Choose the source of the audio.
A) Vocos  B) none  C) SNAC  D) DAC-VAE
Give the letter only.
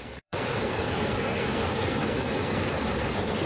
C